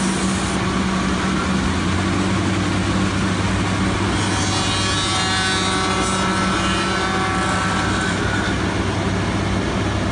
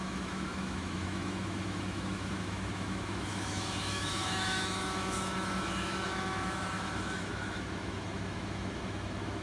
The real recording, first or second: first